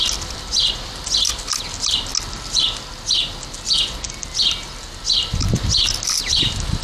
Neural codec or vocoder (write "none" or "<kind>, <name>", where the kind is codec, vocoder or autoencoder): none